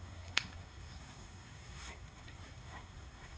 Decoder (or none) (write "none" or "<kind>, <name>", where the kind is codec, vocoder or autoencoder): codec, SNAC